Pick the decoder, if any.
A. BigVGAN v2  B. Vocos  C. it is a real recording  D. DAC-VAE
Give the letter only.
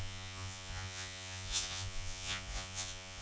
B